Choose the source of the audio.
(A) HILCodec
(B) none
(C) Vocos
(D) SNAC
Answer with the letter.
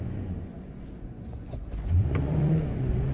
C